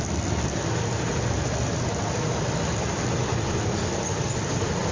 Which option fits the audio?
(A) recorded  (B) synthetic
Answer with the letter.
A